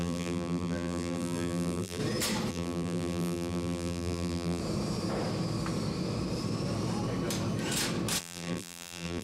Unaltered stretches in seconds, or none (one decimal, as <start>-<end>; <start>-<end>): 2.0-2.5; 4.6-8.2